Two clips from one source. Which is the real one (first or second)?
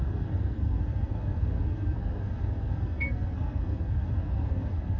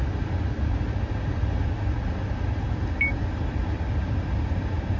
second